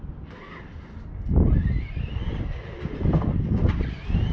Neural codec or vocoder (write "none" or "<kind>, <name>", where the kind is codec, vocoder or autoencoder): none